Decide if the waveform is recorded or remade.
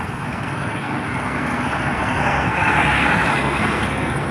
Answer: remade